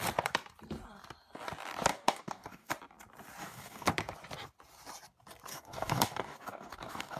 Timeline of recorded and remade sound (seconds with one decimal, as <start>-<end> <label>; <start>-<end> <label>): 0.0-1.9 recorded; 1.9-2.7 remade; 2.7-3.4 recorded; 3.4-3.9 remade; 3.9-5.5 recorded; 5.5-7.2 remade